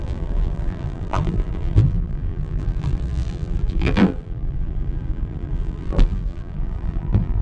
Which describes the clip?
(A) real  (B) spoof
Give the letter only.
B